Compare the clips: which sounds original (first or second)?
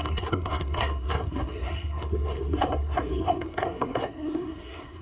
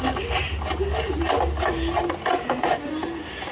second